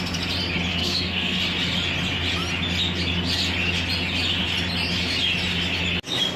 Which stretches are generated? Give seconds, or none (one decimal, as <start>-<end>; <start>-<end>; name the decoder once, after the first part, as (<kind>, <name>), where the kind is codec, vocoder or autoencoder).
0.8-1.4 (codec, SNAC)